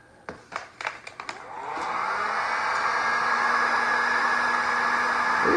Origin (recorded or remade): recorded